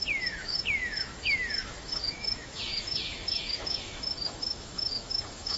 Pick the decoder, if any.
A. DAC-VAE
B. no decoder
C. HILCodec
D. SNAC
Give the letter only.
A